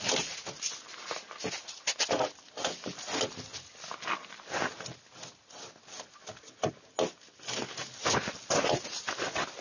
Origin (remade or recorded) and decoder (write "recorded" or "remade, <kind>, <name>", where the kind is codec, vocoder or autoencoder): recorded